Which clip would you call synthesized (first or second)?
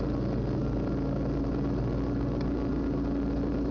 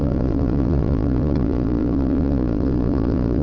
second